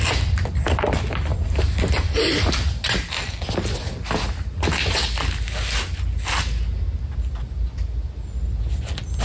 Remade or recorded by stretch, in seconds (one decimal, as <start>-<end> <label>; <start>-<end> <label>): 0.0-9.2 recorded